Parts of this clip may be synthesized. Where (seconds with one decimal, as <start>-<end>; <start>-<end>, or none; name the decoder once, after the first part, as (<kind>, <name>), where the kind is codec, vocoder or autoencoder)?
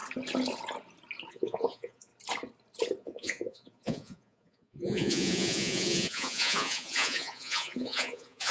1.3-2.1 (vocoder, Vocos); 3.0-8.5